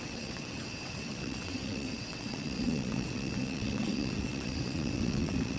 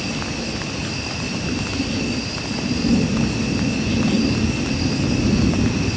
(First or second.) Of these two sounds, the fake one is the first